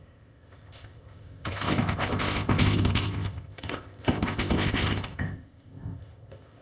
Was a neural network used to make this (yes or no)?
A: yes